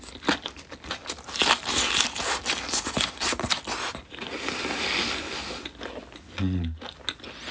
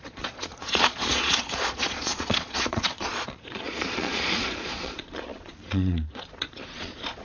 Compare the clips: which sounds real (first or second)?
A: first